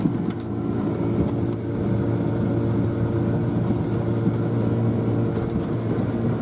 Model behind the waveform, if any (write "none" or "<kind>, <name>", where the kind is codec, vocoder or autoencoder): none